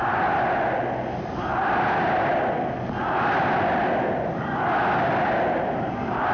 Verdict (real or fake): real